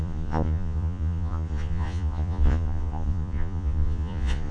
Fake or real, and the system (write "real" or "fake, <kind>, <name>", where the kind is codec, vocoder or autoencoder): fake, vocoder, Vocos